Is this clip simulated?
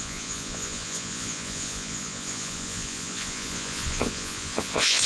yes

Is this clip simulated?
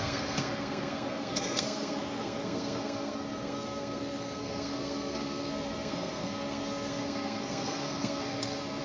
yes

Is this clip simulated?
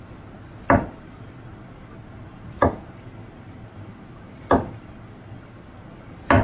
no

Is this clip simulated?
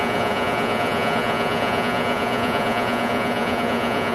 yes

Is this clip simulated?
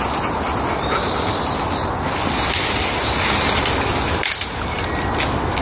no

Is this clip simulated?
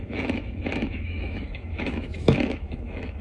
yes